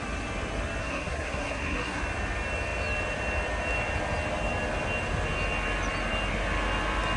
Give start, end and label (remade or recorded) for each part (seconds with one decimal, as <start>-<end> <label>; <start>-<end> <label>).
0.0-0.8 recorded; 0.8-2.0 remade; 2.0-7.2 recorded

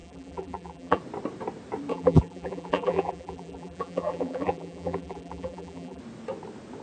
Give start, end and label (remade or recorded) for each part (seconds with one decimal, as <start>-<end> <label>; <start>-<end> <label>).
0.0-1.0 remade; 1.0-1.9 recorded; 1.9-6.0 remade; 6.0-6.8 recorded

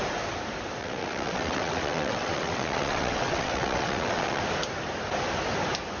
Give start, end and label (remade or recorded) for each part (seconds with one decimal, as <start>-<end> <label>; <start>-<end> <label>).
0.0-0.8 recorded; 0.8-4.4 remade; 4.4-6.0 recorded

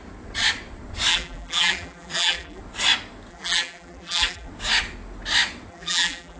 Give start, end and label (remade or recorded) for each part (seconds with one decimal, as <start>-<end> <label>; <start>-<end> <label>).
0.0-1.1 recorded; 1.1-2.6 remade; 2.6-3.3 recorded; 3.3-4.5 remade; 4.5-5.7 recorded; 5.7-6.4 remade